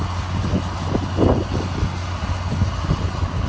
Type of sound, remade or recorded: recorded